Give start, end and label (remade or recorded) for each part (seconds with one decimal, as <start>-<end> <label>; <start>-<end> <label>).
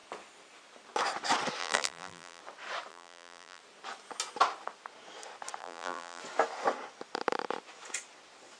0.0-1.6 recorded; 1.6-2.4 remade; 2.4-2.9 recorded; 2.9-3.6 remade; 3.6-5.6 recorded; 5.6-6.2 remade; 6.2-8.6 recorded